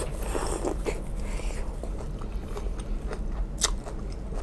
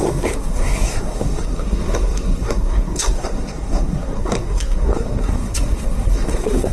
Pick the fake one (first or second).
second